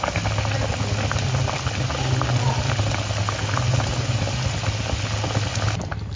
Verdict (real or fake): real